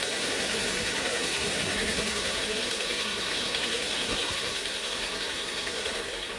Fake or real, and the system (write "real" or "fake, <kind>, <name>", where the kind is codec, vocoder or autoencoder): fake, codec, SNAC